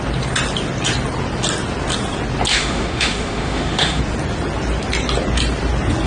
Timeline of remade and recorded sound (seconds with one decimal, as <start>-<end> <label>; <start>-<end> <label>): 0.0-2.5 recorded; 2.5-4.0 remade; 4.0-6.1 recorded